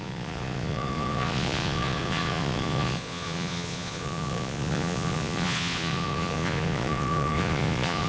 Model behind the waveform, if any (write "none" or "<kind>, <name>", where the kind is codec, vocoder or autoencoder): vocoder, Vocos